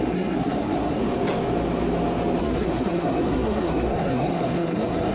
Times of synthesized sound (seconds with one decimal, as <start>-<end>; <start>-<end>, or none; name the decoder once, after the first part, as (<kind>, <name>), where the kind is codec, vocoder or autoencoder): 0.0-1.0 (codec, SNAC); 2.4-5.1